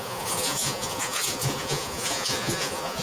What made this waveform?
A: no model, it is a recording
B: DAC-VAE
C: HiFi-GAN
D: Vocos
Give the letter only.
D